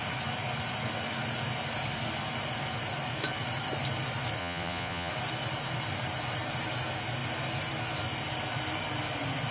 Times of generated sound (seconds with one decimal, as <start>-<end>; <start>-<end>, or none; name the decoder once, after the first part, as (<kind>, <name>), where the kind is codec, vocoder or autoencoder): 4.4-5.1 (vocoder, Vocos)